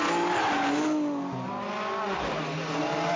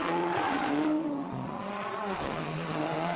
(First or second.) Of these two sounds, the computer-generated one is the second